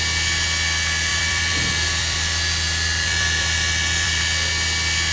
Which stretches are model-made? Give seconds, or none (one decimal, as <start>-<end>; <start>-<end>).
1.1-4.2